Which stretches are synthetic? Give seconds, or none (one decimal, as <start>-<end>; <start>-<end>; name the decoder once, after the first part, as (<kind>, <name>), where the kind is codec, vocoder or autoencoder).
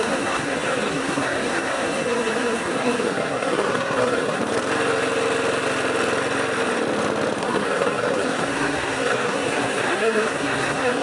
0.0-4.4 (codec, SNAC); 7.4-11.0